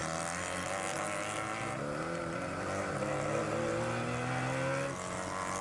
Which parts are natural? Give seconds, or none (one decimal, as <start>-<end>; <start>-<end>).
0.0-5.6